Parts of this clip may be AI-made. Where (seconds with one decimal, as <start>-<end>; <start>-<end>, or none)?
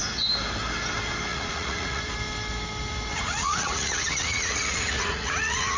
1.3-2.0; 3.1-5.8